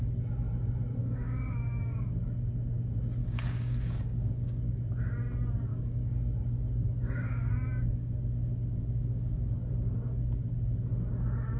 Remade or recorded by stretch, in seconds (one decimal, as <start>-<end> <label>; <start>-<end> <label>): 0.0-1.0 recorded; 1.0-2.1 remade; 2.1-3.2 recorded; 3.2-4.6 remade; 4.6-5.7 recorded; 5.7-9.7 remade; 9.7-11.6 recorded

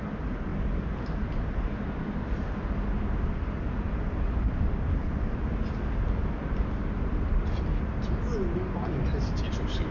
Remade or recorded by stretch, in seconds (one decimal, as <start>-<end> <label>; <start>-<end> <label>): 0.0-9.9 recorded

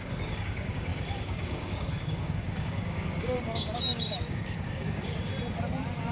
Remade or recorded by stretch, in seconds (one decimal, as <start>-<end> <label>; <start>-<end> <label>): 0.0-5.3 remade; 5.3-6.1 recorded

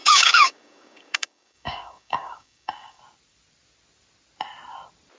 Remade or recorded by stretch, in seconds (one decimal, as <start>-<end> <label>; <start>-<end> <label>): 0.0-3.0 remade; 3.0-5.2 recorded

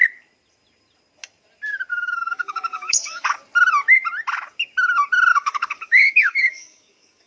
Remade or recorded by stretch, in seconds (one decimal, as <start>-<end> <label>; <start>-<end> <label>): 0.0-1.9 recorded; 1.9-3.4 remade; 3.4-5.3 recorded; 5.3-7.3 remade

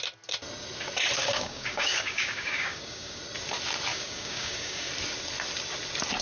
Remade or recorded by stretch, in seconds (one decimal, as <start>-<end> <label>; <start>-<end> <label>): 0.0-1.2 recorded; 1.2-3.2 remade; 3.2-3.9 recorded; 3.9-4.9 remade; 4.9-6.2 recorded